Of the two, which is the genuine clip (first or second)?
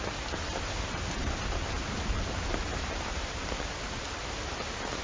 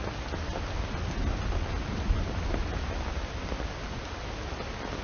second